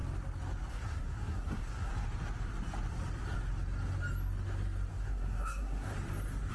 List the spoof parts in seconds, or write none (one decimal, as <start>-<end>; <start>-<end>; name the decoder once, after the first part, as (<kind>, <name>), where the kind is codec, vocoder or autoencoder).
0.7-1.9 (codec, SNAC); 4.9-5.9